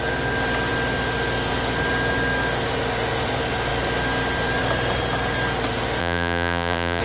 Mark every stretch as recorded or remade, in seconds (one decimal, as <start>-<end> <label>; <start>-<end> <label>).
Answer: 0.0-6.0 recorded; 6.0-7.0 remade